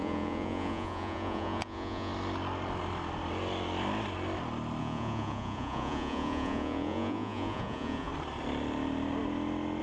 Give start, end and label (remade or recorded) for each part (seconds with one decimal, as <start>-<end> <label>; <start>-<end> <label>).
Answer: 0.0-2.1 remade; 2.1-4.8 recorded; 4.8-8.1 remade; 8.1-9.8 recorded